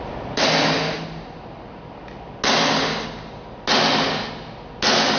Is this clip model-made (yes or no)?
no